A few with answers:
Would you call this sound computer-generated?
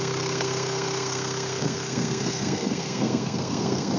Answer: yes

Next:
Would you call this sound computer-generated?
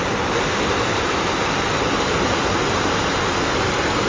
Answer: no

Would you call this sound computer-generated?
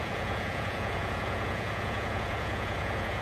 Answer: yes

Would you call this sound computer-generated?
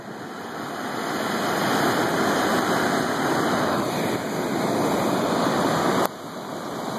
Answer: no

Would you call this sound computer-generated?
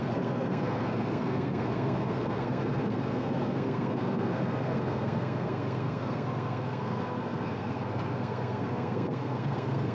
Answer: yes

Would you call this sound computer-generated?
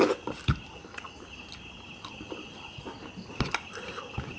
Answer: no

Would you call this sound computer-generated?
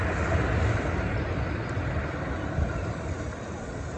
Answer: no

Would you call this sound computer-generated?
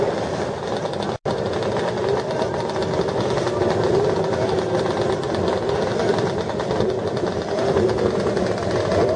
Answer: no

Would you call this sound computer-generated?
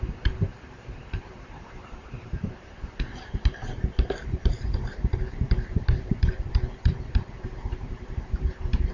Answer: yes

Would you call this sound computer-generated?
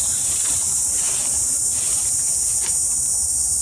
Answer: no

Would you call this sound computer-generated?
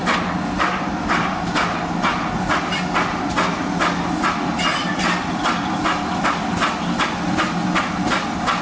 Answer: no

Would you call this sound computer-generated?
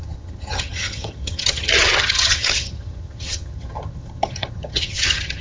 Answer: yes